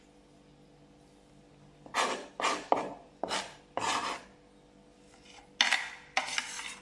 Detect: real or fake real